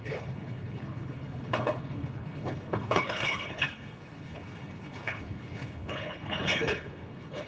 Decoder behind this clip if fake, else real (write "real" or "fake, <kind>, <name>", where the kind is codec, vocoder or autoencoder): fake, codec, HILCodec